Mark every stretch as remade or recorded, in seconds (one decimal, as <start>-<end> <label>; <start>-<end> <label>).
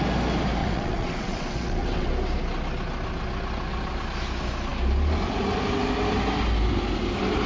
0.0-0.6 recorded; 0.6-2.1 remade; 2.1-7.5 recorded